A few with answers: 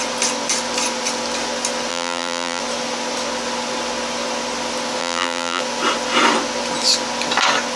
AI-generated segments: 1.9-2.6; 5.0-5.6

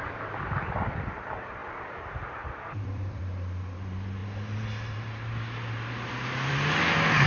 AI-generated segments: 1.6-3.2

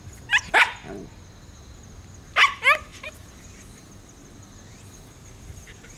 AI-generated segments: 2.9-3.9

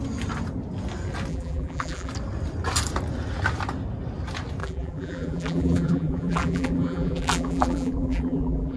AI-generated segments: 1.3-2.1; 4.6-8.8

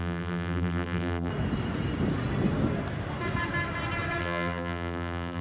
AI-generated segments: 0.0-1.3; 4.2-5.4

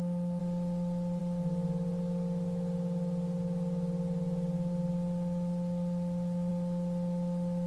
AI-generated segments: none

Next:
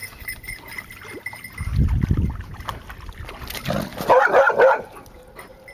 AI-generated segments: none

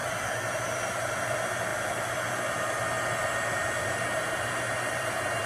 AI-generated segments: 0.0-0.6